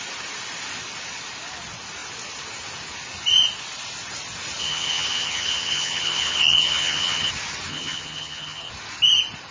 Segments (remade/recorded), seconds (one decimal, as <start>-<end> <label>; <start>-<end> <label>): 0.0-4.6 recorded; 4.6-7.3 remade; 7.3-7.7 recorded; 7.7-8.7 remade; 8.7-9.5 recorded